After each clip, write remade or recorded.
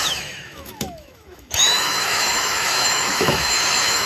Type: remade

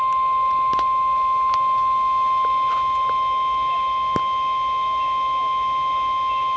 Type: recorded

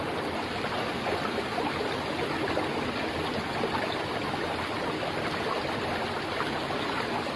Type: recorded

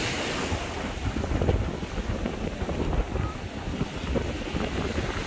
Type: recorded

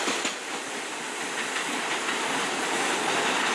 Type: recorded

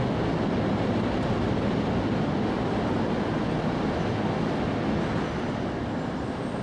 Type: recorded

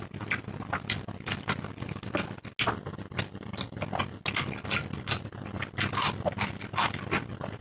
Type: recorded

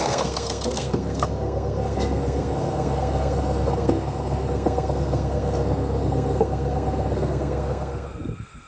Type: remade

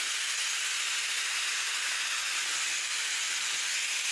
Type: recorded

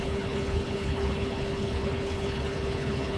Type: remade